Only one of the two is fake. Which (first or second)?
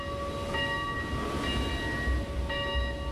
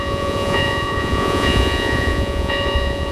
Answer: second